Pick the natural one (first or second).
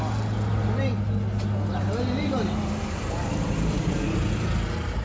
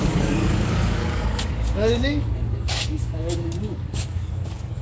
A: first